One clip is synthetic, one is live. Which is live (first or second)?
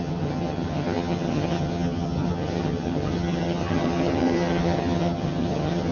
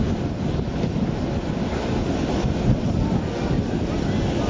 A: second